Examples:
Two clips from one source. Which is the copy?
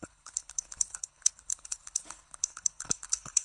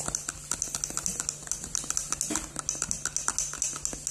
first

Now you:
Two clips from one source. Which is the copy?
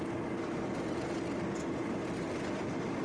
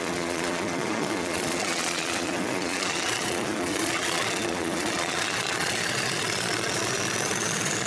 second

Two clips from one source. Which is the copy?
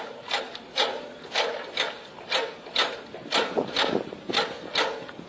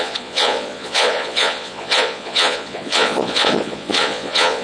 second